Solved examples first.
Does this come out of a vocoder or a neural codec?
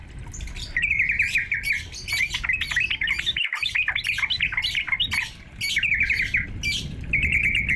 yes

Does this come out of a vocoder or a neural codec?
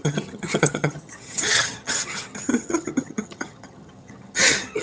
yes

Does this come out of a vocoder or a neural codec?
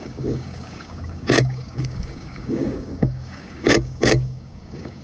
yes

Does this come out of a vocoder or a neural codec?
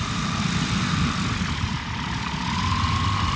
no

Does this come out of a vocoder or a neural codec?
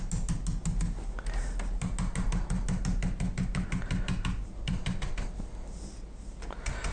no